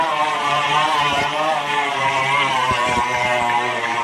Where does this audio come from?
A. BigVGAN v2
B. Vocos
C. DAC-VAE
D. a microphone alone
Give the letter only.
A